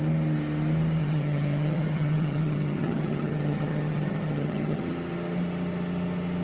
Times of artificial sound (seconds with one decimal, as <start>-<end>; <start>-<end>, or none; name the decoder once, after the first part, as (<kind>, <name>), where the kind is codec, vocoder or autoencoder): 1.0-4.8 (vocoder, HiFi-GAN)